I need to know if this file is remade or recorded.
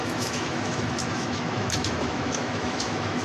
remade